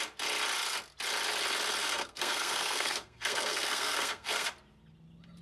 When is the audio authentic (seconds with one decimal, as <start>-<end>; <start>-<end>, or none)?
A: 0.0-1.8; 4.5-5.4